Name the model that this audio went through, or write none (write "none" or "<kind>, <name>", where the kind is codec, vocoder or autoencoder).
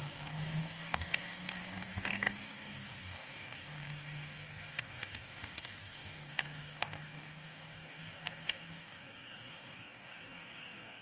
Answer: codec, DAC